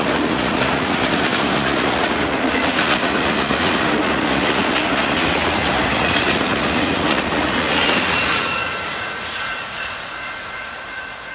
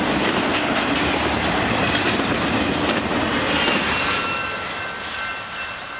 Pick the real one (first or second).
second